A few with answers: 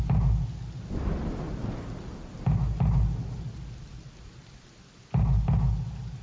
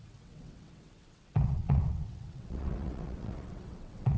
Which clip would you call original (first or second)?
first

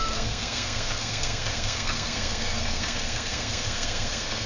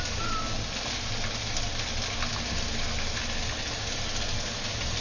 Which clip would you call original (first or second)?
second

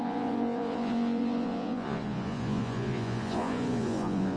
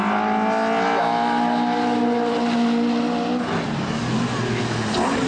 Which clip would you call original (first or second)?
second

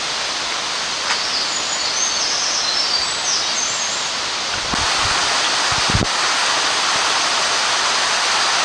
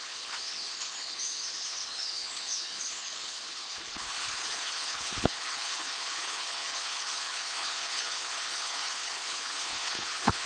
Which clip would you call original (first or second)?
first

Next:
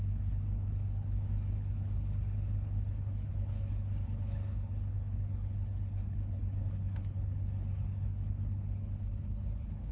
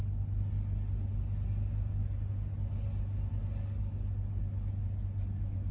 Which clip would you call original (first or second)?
second